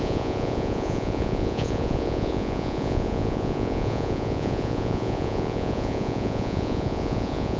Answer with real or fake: fake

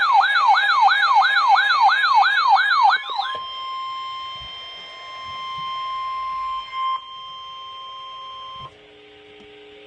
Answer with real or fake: real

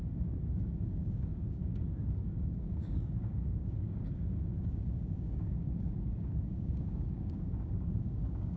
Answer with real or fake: fake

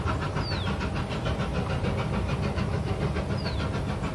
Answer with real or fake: real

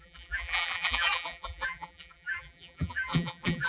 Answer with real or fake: fake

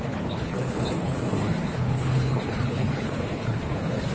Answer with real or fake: fake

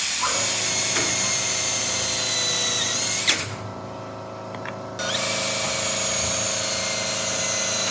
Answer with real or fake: real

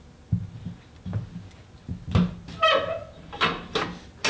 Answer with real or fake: real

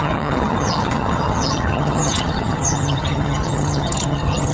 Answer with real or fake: fake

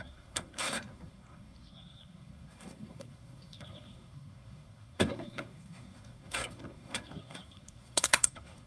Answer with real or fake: fake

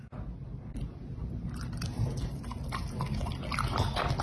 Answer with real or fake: real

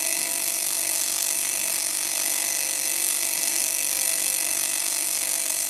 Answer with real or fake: fake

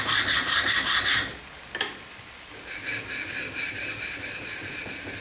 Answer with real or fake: real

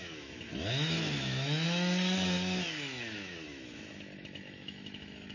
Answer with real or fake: fake